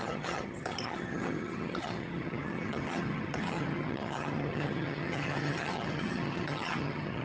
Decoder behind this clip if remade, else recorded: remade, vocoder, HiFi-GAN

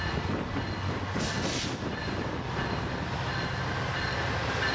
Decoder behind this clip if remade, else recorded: recorded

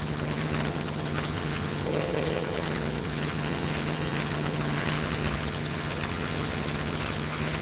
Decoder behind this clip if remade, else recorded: remade, vocoder, HiFi-GAN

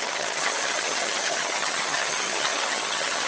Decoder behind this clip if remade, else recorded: remade, vocoder, HiFi-GAN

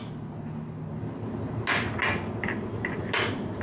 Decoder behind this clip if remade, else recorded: recorded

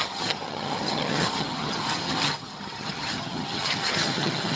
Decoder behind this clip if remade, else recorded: remade, vocoder, HiFi-GAN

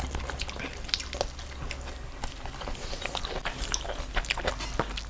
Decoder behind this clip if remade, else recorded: recorded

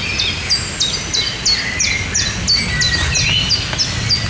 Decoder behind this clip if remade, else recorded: recorded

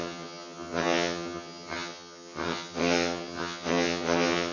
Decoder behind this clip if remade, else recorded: remade, vocoder, HiFi-GAN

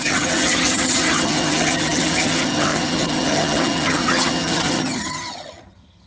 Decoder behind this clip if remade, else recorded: remade, vocoder, HiFi-GAN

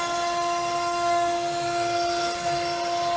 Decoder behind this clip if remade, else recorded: recorded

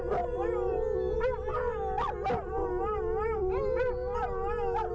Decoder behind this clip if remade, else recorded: recorded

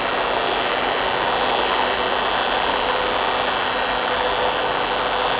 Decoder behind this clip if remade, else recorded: recorded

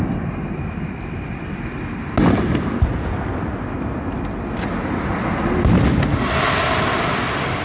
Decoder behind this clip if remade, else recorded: recorded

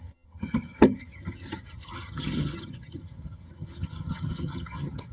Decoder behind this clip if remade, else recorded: remade, vocoder, HiFi-GAN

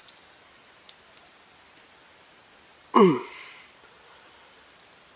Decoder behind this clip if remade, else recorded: recorded